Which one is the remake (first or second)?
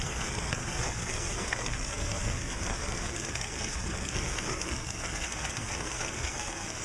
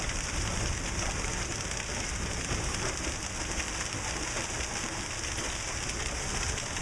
first